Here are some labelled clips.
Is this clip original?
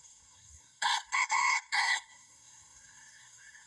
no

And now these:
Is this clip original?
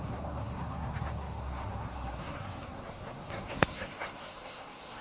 no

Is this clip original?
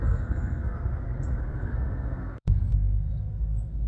no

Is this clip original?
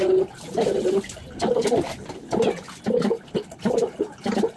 yes